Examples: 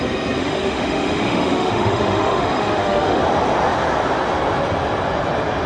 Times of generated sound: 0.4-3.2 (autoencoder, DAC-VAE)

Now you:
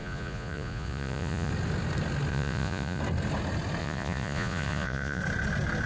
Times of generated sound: 0.0-1.5 (vocoder, Vocos); 2.3-3.0; 3.8-5.2

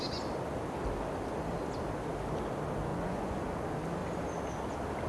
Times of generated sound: 2.9-3.5 (vocoder, Vocos)

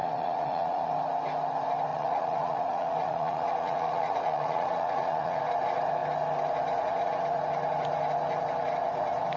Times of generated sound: 0.0-0.9 (vocoder, Vocos); 1.9-5.4